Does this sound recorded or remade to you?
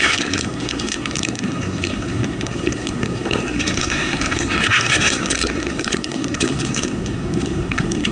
remade